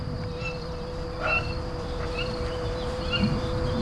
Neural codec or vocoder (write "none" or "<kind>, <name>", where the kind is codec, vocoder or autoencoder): vocoder, BigVGAN v2